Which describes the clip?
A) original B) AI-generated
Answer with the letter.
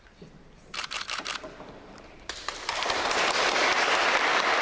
B